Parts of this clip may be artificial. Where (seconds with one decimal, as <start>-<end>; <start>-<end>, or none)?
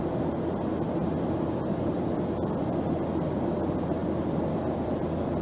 none